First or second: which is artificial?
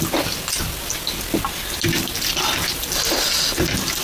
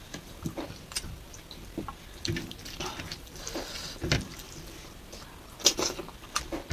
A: second